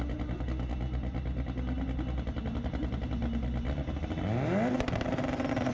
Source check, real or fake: real